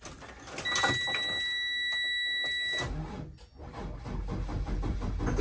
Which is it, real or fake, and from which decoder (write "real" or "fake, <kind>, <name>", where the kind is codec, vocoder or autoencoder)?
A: real